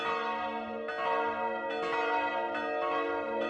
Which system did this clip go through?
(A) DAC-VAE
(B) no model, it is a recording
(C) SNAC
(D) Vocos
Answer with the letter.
B